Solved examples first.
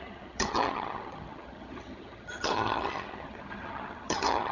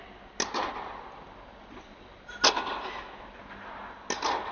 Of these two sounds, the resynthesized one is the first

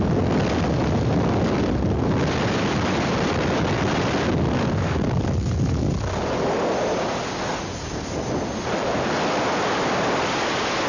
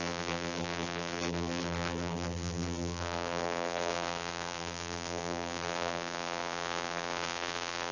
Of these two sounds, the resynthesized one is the second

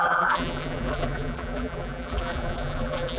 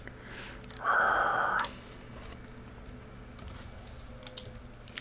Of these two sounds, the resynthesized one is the first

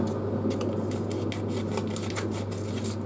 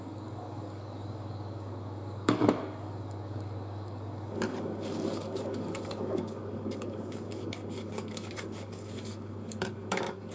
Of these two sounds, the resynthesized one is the second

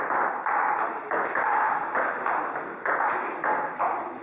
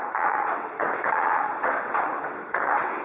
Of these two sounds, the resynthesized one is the second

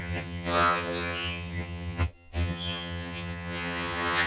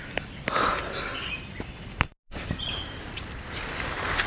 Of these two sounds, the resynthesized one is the first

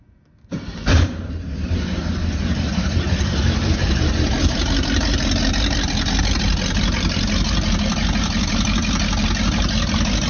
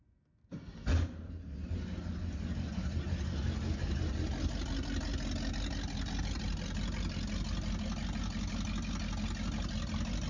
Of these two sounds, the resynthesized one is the first